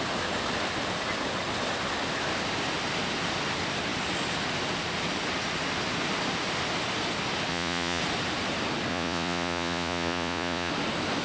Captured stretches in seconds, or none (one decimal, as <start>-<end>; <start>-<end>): 0.0-7.5; 8.0-8.9; 10.7-11.2